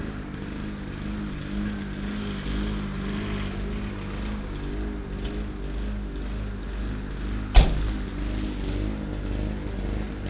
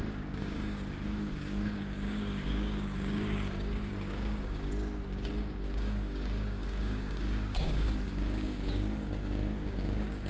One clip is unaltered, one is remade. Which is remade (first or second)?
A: second